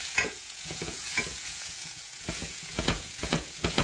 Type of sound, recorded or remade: remade